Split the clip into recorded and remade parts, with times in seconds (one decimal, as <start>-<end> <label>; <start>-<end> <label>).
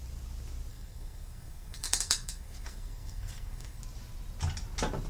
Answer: 0.0-0.7 recorded; 0.7-3.8 remade; 3.8-5.1 recorded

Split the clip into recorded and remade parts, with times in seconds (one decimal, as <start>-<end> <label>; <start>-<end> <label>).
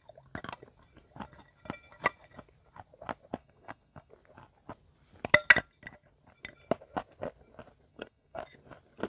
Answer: 0.0-3.4 recorded; 3.4-4.1 remade; 4.1-7.9 recorded; 7.9-8.4 remade; 8.4-9.1 recorded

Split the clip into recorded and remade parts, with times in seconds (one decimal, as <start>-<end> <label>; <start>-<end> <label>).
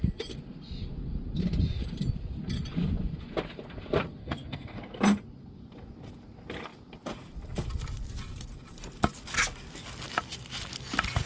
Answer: 0.0-4.2 recorded; 4.2-5.0 remade; 5.0-11.3 recorded